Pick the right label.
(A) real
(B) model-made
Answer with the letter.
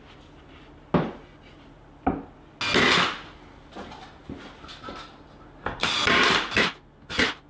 A